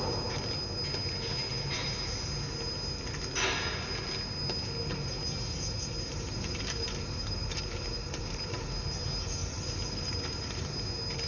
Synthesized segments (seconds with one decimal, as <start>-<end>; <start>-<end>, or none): 6.1-8.7; 9.4-10.8